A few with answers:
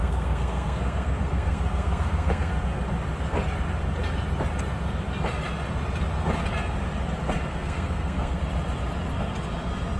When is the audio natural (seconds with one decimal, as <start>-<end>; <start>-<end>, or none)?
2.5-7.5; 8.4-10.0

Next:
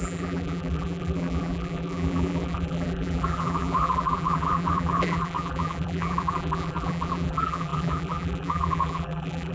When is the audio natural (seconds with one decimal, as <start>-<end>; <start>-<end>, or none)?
none

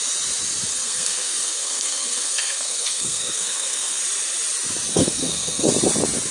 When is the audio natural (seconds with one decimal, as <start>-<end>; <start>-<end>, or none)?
0.0-0.7; 4.0-4.9; 5.7-6.3

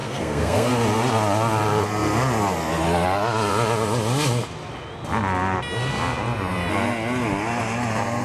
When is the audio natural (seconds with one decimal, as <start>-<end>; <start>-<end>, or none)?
0.7-8.2

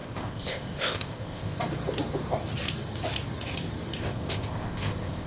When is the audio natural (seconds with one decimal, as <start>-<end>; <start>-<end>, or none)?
1.6-4.0

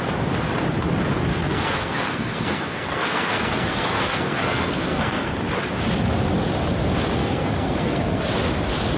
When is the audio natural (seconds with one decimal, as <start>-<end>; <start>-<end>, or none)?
0.0-1.3; 5.4-7.2; 8.2-9.0

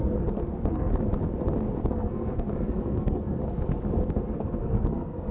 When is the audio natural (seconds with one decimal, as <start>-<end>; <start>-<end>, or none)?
0.9-1.9; 3.4-4.1